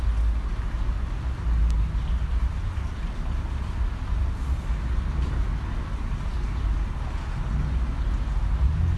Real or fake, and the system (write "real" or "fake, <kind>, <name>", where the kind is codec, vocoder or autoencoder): real